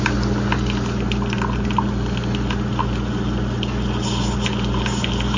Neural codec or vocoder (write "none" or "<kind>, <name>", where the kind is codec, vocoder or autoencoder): none